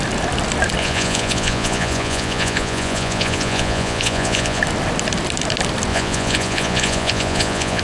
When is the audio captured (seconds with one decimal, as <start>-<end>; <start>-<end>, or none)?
0.0-0.8; 4.6-5.9